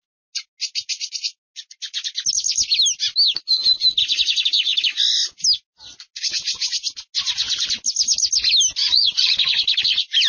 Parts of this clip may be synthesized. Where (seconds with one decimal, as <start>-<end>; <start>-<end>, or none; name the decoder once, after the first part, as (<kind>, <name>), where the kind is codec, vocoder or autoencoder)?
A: 8.8-9.4 (vocoder, Vocos)